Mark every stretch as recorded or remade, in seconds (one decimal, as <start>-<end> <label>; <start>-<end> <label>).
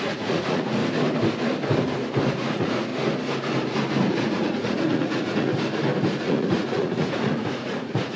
0.0-0.8 remade; 0.8-2.3 recorded; 2.3-2.9 remade; 2.9-4.1 recorded; 4.1-5.5 remade; 5.5-6.1 recorded; 6.1-8.2 remade